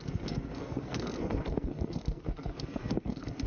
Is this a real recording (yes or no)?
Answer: no